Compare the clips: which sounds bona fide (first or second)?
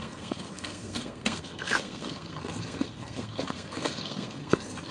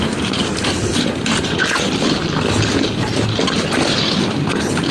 second